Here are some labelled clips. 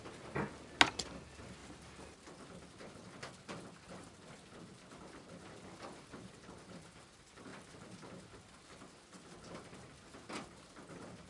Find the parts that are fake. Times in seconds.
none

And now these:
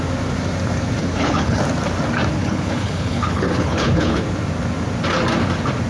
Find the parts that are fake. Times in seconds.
1.0-1.6 (codec, HILCodec); 2.4-4.2

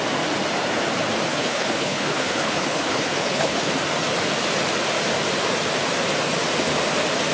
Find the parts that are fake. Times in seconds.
1.3-3.7 (codec, HILCodec)

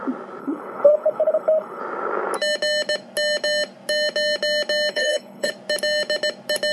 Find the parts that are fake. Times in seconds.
0.4-1.8 (codec, HILCodec); 4.9-5.5

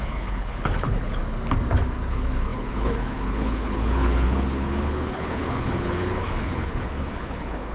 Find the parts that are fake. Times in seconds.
0.0-1.2 (codec, HILCodec); 2.1-7.7

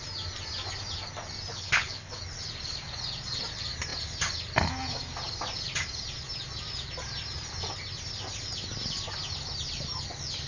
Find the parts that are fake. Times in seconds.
1.5-2.2 (codec, HILCodec)

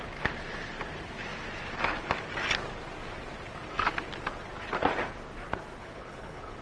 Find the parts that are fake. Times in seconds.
5.8-6.6 (codec, HILCodec)